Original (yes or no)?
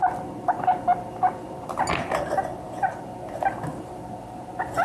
yes